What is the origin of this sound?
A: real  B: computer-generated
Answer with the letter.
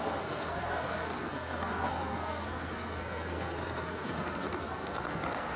B